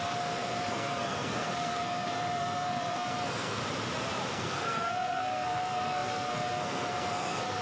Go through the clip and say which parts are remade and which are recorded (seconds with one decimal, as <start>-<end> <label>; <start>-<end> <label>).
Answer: 0.0-3.6 remade; 3.6-4.3 recorded; 4.3-7.6 remade